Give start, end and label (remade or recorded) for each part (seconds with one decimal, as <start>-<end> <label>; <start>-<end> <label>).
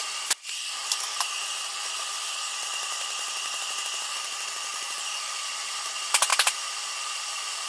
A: 0.0-0.8 recorded; 0.8-1.7 remade; 1.7-4.7 recorded; 4.7-5.5 remade; 5.5-7.7 recorded